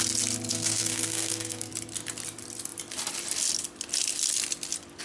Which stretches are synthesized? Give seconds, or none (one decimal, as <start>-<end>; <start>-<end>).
0.5-1.7